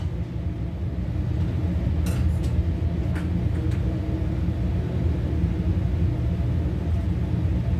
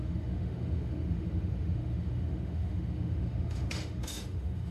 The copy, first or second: second